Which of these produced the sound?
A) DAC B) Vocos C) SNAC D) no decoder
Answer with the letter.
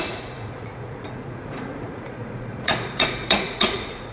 B